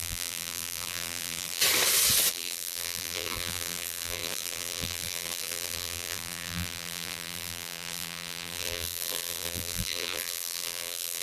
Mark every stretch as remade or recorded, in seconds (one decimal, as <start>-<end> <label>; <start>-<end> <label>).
0.0-1.6 remade; 1.6-2.3 recorded; 2.3-11.2 remade